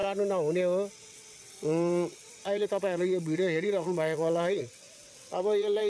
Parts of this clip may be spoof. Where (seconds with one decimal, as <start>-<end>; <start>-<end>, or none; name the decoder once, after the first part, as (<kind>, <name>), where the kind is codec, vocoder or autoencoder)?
0.9-5.9 (vocoder, WaveNeXt)